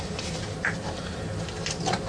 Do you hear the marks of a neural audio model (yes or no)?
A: no